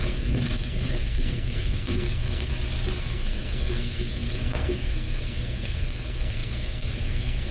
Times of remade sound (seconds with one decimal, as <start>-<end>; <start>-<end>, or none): 0.0-2.5; 3.0-7.5

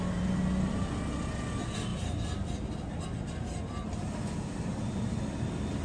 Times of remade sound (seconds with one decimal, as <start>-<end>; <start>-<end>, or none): none

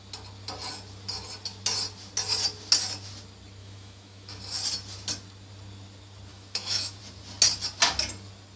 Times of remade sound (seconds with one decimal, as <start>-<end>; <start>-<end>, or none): 3.6-4.4; 6.3-7.0

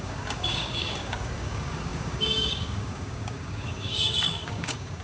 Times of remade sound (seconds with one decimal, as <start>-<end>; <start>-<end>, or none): 0.0-5.0

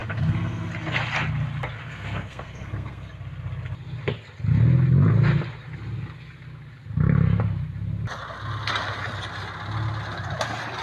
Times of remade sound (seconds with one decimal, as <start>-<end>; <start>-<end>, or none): 0.0-0.7; 1.8-3.1